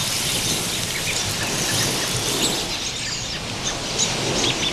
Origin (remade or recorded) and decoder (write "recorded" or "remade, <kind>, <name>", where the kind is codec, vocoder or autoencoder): recorded